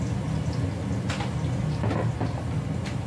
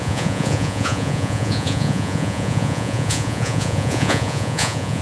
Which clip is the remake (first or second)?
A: second